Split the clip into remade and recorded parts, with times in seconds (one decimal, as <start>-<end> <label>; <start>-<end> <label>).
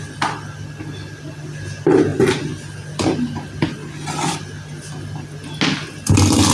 0.0-6.5 recorded